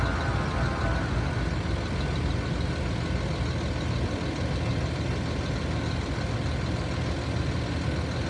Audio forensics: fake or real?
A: real